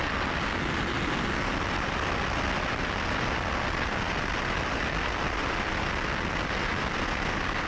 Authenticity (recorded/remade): recorded